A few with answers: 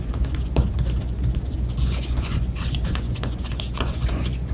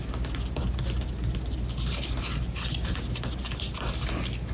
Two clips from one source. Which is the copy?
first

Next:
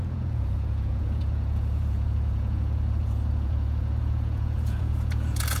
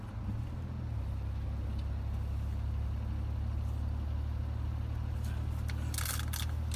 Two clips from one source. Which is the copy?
first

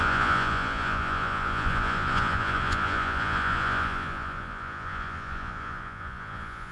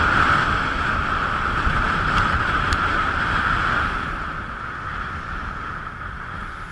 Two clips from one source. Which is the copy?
first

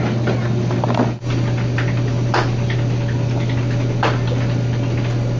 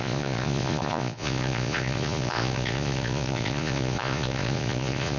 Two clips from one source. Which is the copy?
second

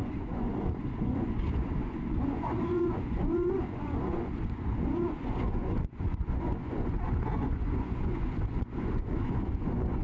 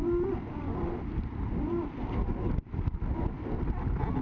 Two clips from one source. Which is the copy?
first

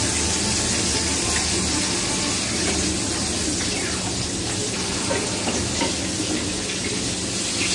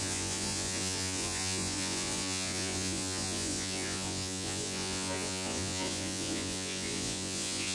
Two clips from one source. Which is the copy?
second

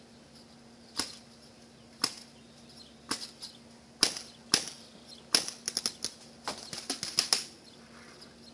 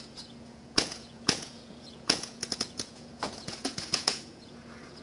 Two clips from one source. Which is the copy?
second